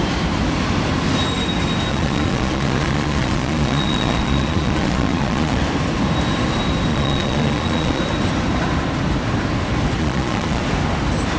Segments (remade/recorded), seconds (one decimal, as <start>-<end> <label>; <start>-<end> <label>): 0.0-1.9 recorded; 1.9-5.6 remade; 5.6-6.9 recorded; 6.9-8.0 remade; 8.0-10.0 recorded; 10.0-10.6 remade; 10.6-11.4 recorded